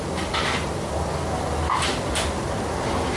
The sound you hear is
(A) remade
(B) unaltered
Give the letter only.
B